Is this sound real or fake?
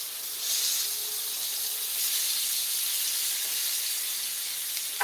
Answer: real